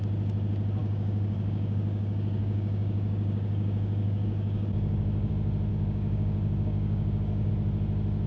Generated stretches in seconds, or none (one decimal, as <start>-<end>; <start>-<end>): 0.8-5.3; 5.7-7.5